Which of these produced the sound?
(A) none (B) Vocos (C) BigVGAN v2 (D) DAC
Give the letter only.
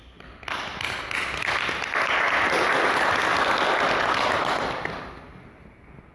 A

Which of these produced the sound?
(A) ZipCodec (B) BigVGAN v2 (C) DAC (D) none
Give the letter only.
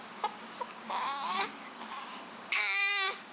C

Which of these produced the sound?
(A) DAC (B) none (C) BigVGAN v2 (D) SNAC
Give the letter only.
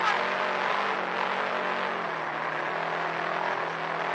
B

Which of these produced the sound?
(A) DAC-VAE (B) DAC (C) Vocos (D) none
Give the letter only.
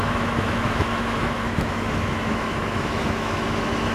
A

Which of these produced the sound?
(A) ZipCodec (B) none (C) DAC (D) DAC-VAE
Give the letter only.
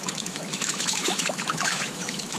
D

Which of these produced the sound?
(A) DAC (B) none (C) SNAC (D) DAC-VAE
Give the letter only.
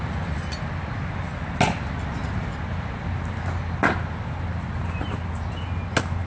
B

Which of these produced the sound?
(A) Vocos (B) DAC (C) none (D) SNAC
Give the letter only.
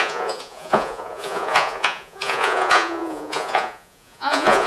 A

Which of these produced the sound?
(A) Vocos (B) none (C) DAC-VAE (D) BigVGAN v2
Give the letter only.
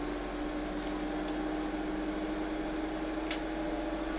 B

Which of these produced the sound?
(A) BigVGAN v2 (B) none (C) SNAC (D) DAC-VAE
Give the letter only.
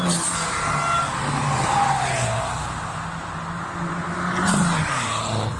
B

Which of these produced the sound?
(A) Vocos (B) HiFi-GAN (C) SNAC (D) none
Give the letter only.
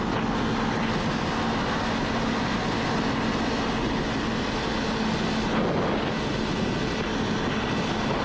D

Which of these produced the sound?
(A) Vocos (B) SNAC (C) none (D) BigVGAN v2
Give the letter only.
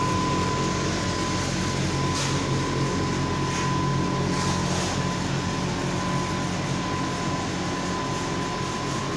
C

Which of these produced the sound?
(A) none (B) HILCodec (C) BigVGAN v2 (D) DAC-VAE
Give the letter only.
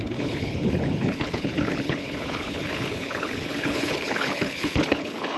B